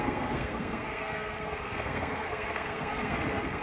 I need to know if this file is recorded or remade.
remade